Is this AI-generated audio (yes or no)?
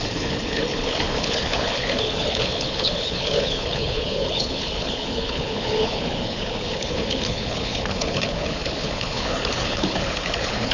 yes